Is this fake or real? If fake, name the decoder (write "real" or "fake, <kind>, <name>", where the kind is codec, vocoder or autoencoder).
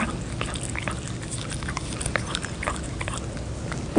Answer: real